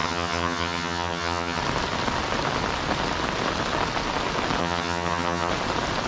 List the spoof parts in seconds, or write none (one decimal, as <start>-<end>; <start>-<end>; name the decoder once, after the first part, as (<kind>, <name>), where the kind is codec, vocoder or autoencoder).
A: 0.0-1.6 (vocoder, HiFi-GAN); 4.6-5.5